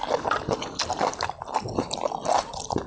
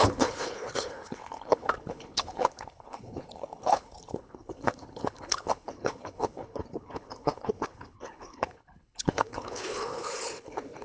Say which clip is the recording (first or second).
first